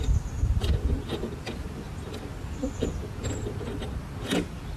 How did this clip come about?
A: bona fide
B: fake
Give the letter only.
A